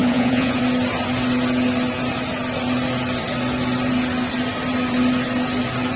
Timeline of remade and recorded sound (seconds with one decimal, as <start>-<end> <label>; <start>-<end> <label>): 0.0-0.6 remade; 0.6-6.0 recorded